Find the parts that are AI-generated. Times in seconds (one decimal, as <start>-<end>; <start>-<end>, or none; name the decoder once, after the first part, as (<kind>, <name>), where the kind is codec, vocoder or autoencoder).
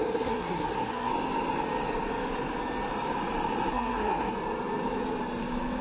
0.0-1.1 (codec, SNAC); 3.7-4.3